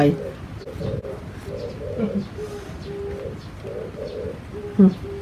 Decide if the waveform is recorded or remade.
recorded